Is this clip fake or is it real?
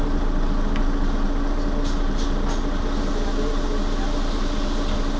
real